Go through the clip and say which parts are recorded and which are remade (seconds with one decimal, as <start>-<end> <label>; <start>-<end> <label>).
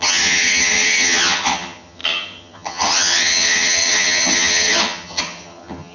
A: 0.0-5.9 remade